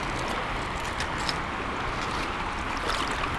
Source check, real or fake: real